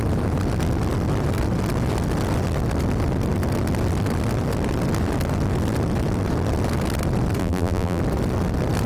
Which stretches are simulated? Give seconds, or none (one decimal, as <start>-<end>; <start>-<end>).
7.4-8.0